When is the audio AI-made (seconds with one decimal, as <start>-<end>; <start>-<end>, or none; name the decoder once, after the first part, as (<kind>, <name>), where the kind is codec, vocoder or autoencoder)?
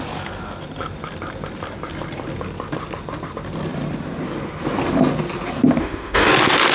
5.8-6.3 (autoencoder, DAC-VAE)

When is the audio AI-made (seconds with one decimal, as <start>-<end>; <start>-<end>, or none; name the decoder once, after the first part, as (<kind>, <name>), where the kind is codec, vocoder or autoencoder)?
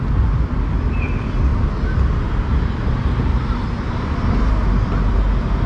none